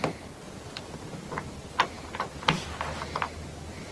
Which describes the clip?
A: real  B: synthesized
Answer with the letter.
A